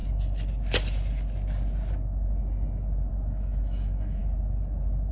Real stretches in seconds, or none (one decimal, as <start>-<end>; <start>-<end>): 0.0-3.1; 4.2-5.1